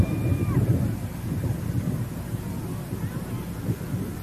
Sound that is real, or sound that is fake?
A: real